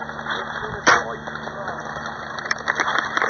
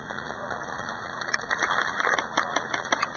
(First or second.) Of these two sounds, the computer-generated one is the second